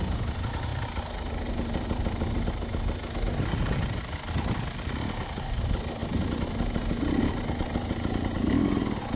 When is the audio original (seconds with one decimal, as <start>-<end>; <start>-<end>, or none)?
0.0-9.2